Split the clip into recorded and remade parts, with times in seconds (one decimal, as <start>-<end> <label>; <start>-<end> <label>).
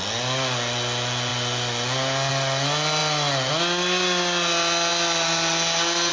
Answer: 0.0-6.1 recorded